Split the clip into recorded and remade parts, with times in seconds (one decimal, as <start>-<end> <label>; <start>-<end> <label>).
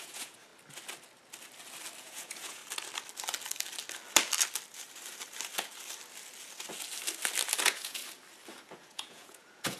0.0-0.5 remade; 0.5-2.0 recorded; 2.0-2.6 remade; 2.6-7.6 recorded; 7.6-8.0 remade; 8.0-8.5 recorded; 8.5-9.8 remade